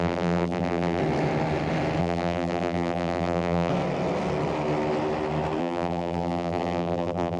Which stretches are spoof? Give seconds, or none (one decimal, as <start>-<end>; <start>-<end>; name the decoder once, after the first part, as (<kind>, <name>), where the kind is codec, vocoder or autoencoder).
0.0-1.0 (vocoder, BigVGAN v2); 2.0-3.7; 5.6-7.4